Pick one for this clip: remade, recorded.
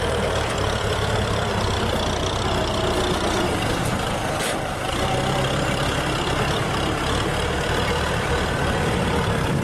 remade